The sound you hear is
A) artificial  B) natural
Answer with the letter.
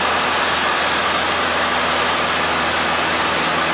B